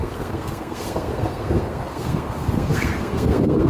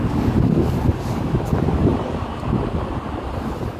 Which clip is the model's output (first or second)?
first